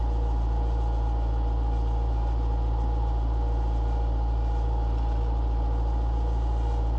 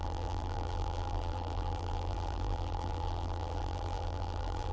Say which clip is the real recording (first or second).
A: first